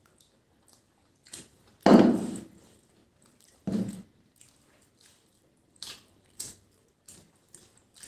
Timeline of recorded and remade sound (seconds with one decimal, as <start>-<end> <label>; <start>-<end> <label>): 0.0-3.0 recorded; 3.0-3.9 remade; 3.9-5.3 recorded; 5.3-7.1 remade; 7.1-8.1 recorded